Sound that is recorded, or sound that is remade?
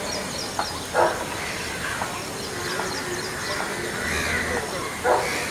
recorded